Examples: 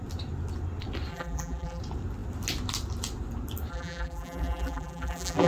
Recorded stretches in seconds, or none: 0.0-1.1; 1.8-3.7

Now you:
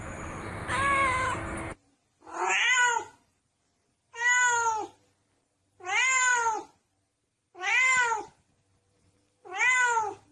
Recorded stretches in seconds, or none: 0.0-10.3